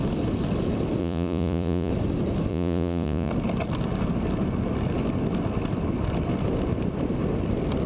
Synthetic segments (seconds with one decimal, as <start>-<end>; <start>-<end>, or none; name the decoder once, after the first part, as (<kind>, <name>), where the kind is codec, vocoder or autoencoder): 1.0-1.9 (vocoder, Vocos); 2.5-3.3